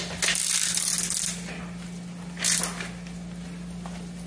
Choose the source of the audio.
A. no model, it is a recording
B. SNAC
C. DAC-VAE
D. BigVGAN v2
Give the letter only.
A